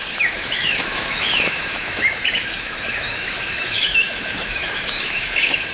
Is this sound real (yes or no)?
no